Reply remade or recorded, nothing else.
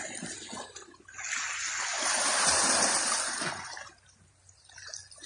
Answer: recorded